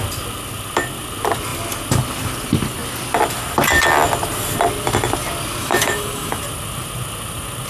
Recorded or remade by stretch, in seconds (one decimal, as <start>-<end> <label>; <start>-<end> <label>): 0.0-5.6 recorded; 5.6-6.4 remade; 6.4-7.7 recorded